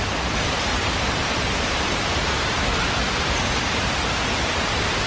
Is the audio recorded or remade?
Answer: recorded